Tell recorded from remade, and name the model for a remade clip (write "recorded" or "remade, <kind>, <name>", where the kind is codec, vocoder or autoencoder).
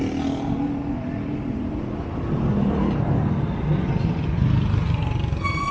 recorded